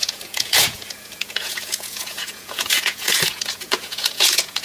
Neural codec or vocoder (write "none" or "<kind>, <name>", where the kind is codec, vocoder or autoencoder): vocoder, Vocos